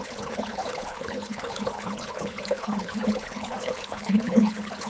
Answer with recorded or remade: remade